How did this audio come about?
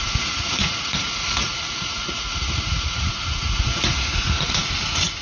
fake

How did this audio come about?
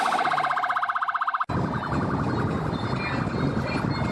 real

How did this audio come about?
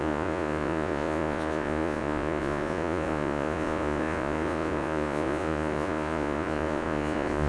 fake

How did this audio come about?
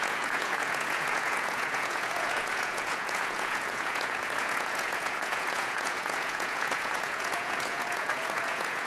fake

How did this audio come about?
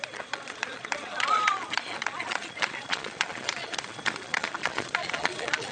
fake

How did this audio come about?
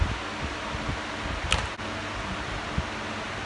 real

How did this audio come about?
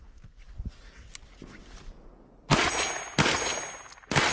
real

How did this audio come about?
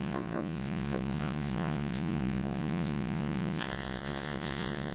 fake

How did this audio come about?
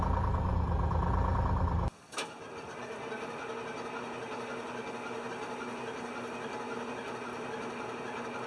real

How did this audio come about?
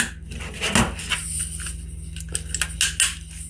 real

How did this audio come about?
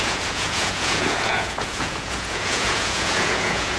fake